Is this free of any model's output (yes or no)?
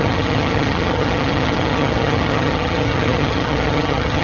no